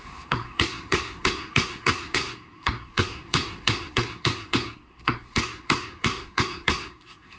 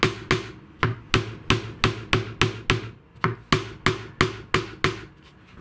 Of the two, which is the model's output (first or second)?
first